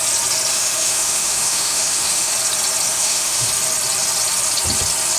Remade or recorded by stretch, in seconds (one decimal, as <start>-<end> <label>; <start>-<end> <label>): 0.0-0.5 recorded; 0.5-2.3 remade; 2.3-2.9 recorded; 2.9-3.5 remade; 3.5-5.2 recorded